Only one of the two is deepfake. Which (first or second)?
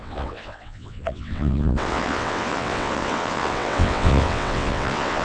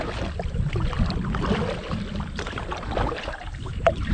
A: first